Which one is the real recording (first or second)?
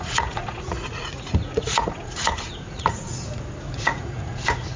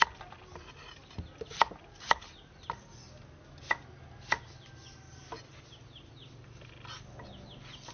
second